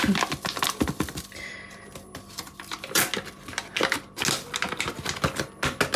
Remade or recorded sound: recorded